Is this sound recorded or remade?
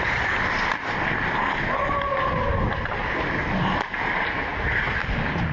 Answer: recorded